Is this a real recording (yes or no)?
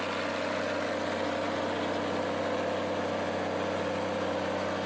yes